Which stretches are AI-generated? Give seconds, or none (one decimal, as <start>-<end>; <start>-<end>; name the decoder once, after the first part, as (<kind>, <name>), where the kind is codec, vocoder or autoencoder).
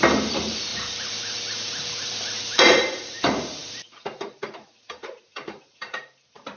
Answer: 0.0-6.6 (vocoder, BigVGAN v2)